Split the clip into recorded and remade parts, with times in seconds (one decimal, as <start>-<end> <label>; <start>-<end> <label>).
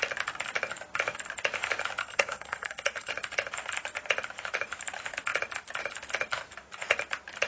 0.0-2.0 recorded; 2.0-3.1 remade; 3.1-7.5 recorded